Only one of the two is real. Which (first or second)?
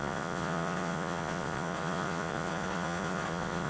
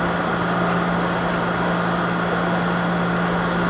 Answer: second